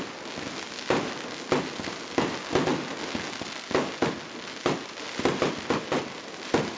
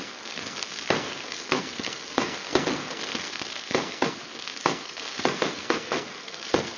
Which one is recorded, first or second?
first